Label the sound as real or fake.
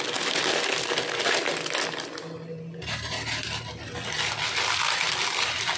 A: real